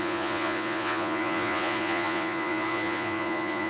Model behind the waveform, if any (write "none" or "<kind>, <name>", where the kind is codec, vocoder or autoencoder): vocoder, Vocos